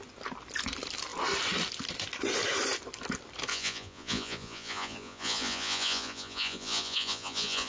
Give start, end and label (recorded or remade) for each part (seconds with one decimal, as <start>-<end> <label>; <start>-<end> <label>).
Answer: 0.0-3.5 recorded; 3.5-7.7 remade